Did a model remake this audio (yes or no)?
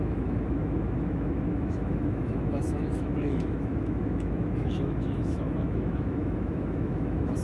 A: yes